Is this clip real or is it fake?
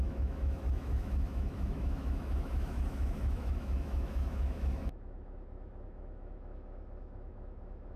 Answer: fake